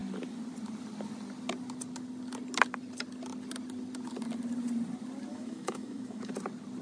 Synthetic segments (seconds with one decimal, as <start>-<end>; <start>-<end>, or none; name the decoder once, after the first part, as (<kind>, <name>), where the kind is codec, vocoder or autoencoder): 5.3-6.3 (autoencoder, DAC-VAE)